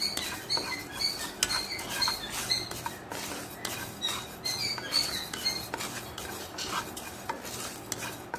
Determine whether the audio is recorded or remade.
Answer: recorded